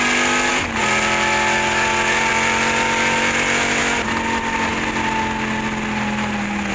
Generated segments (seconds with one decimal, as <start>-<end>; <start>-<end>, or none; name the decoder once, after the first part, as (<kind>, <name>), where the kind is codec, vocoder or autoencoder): none